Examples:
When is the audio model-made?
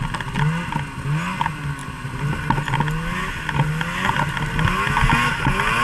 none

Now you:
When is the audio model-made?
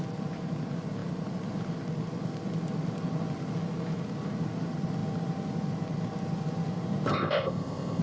7.1-8.0 (codec, ZipCodec)